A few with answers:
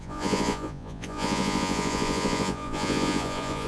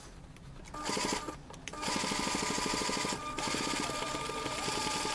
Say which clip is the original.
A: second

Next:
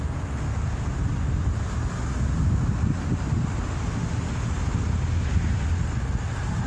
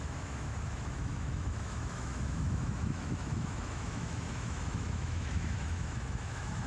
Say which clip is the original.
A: first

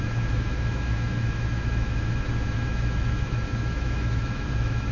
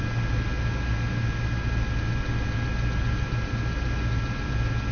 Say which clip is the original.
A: second